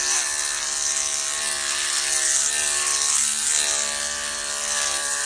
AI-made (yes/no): no